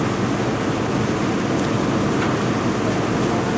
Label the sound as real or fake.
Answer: real